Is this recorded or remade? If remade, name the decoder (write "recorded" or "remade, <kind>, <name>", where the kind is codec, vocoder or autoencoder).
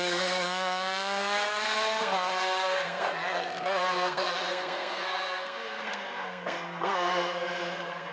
remade, codec, SNAC